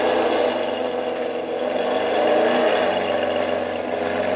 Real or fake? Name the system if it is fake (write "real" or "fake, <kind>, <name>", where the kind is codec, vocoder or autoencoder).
real